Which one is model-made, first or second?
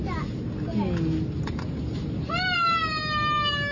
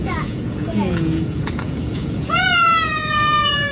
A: second